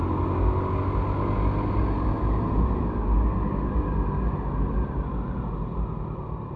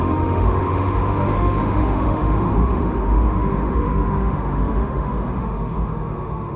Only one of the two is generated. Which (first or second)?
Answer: second